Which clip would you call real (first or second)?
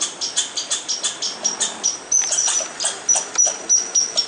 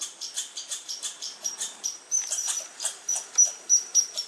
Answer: first